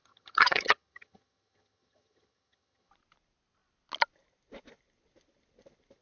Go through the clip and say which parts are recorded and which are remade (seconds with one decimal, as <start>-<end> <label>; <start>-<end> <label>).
0.0-2.9 remade; 2.9-6.0 recorded

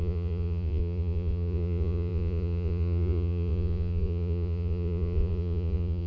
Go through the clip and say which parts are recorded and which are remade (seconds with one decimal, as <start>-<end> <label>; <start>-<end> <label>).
0.0-6.1 remade

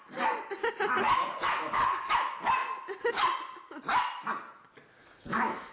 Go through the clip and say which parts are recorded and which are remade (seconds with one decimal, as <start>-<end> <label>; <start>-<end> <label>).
0.0-1.4 recorded; 1.4-2.1 remade; 2.1-5.0 recorded; 5.0-5.7 remade

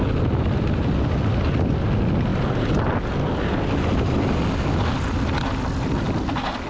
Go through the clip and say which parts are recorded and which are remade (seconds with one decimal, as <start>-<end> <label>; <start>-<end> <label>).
0.0-6.7 recorded

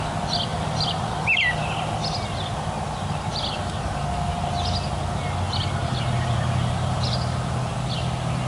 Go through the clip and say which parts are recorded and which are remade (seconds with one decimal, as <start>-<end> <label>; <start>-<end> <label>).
0.0-0.5 recorded; 0.5-1.1 remade; 1.1-5.8 recorded; 5.8-7.1 remade; 7.1-8.5 recorded

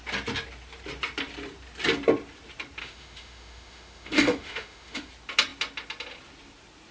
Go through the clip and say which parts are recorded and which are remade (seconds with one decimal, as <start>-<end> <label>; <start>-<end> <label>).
0.0-2.8 recorded; 2.8-5.1 remade; 5.1-6.9 recorded